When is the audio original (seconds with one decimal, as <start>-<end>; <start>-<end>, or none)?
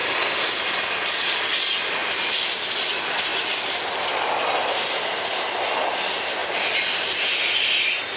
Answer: 0.0-2.0; 2.6-6.4; 7.4-8.2